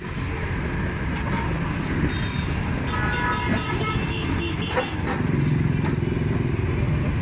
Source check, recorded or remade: recorded